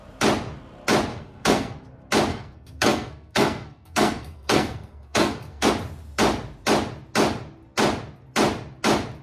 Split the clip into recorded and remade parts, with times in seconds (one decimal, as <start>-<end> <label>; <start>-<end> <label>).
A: 0.0-1.1 recorded; 1.1-1.8 remade; 1.8-2.3 recorded; 2.3-5.7 remade; 5.7-9.2 recorded